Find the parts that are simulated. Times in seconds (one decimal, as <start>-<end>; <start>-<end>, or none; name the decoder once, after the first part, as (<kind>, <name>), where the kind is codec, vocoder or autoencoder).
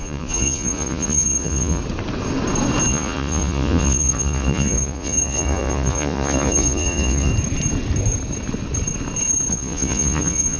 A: 0.0-1.8 (vocoder, Vocos); 2.9-7.3; 9.5-10.6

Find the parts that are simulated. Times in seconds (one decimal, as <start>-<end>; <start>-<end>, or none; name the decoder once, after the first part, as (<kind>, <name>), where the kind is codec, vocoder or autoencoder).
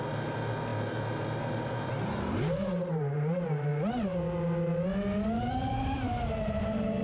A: 0.0-3.7 (vocoder, BigVGAN v2); 5.8-7.0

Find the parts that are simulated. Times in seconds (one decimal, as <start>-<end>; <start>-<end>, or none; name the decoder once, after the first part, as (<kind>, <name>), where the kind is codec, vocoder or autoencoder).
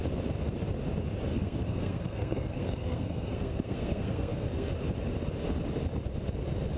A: 1.3-4.7 (codec, SNAC)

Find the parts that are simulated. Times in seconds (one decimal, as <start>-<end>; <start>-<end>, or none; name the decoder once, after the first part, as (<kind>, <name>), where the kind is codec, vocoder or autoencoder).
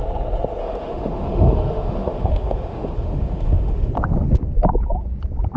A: 0.6-3.9 (autoencoder, DAC-VAE)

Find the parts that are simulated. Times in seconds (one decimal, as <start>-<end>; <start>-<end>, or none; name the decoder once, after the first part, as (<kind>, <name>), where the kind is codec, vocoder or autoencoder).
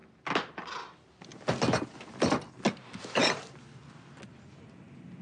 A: none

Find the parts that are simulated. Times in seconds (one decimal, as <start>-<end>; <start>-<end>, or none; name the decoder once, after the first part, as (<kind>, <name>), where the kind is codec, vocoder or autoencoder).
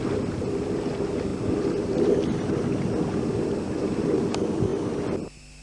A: none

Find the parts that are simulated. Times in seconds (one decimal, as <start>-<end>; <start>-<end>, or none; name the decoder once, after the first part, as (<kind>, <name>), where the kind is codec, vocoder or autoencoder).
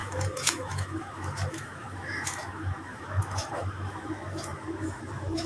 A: 0.0-5.5 (autoencoder, DAC-VAE)